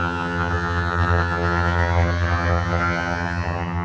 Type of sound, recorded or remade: remade